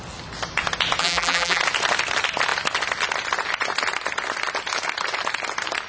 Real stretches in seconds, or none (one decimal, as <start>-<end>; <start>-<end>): 0.0-1.0; 1.6-5.9